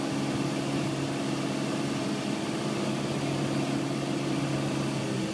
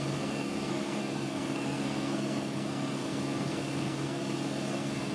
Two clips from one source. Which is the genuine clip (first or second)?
first